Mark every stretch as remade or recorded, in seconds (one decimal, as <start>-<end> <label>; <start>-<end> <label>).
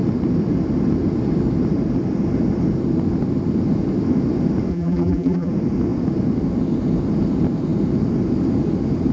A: 0.0-4.7 recorded; 4.7-5.5 remade; 5.5-9.1 recorded